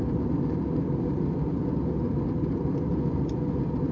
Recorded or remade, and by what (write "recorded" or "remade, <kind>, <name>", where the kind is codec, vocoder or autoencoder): recorded